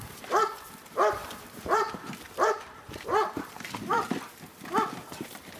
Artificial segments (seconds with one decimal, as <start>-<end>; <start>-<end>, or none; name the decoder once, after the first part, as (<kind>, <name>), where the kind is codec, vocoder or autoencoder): 1.2-4.0 (vocoder, BigVGAN v2)